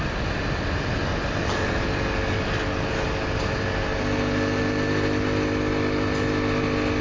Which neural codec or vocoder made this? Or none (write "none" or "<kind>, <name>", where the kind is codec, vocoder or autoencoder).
none